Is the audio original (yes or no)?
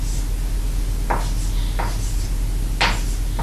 yes